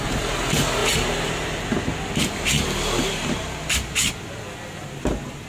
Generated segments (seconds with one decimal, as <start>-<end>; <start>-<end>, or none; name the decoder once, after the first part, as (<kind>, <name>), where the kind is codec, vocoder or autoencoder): none

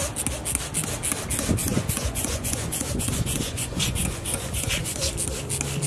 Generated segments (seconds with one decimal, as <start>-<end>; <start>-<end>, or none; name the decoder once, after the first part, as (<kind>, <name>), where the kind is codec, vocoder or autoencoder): 1.6-5.1 (vocoder, Vocos)

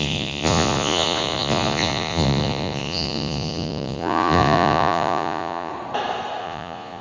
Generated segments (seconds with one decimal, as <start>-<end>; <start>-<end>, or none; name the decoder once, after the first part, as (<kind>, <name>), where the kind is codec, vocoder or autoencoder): 0.0-5.7 (vocoder, Vocos); 6.4-7.0